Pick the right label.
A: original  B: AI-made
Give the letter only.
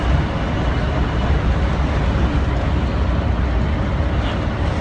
A